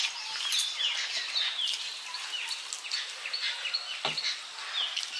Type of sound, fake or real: real